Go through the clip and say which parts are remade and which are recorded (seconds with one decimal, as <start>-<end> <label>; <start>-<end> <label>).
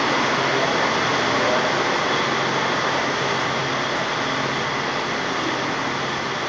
0.0-6.5 recorded